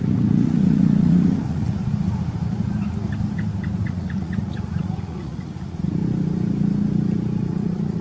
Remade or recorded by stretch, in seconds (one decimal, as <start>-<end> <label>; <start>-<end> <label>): 0.0-1.8 remade; 1.8-3.8 recorded; 3.8-6.0 remade; 6.0-7.4 recorded; 7.4-8.0 remade